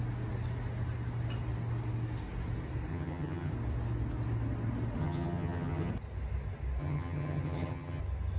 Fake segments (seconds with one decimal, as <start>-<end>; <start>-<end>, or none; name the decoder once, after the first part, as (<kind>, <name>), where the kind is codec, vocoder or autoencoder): 2.9-3.5 (vocoder, HiFi-GAN); 5.0-5.9; 6.8-8.0